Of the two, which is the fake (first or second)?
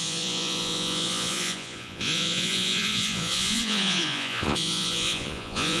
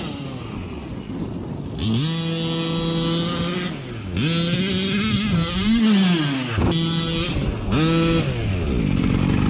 first